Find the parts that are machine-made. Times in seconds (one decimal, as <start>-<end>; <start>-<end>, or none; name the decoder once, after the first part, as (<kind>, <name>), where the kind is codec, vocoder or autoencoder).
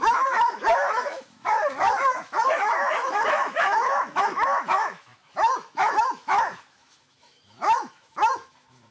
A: 0.0-8.9 (autoencoder, DAC-VAE)